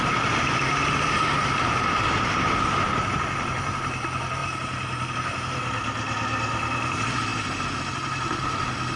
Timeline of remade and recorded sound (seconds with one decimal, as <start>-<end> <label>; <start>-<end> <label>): 0.0-9.0 recorded

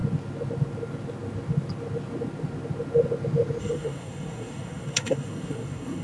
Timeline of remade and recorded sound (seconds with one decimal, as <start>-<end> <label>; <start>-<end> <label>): 0.0-3.6 recorded; 3.6-6.0 remade